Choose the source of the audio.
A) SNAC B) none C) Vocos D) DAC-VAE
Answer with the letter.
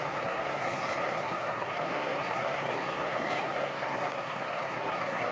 A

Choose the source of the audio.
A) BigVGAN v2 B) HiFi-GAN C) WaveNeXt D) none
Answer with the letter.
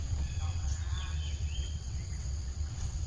C